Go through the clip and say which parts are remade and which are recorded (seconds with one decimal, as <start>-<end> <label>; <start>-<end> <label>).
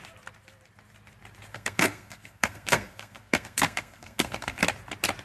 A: 0.0-1.5 recorded; 1.5-4.6 remade; 4.6-5.2 recorded